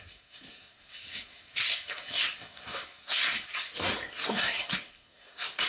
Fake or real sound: fake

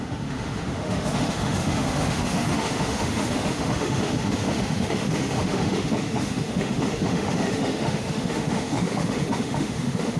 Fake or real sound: fake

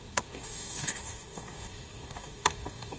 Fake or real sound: fake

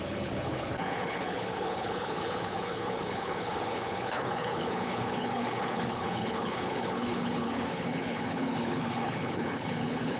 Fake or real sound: fake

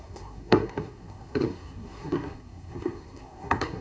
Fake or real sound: fake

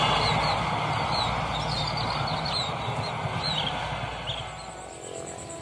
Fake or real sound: real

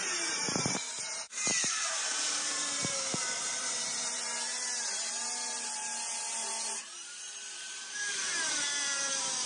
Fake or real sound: fake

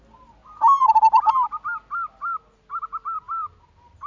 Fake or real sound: real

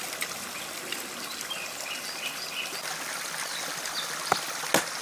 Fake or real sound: real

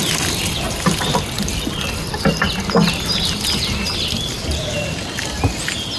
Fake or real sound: real